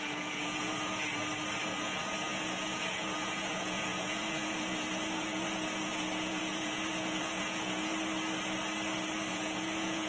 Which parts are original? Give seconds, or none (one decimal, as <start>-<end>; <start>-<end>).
0.9-1.6; 7.9-9.3